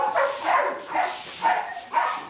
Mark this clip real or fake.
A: real